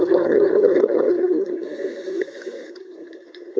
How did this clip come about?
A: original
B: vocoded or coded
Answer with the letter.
B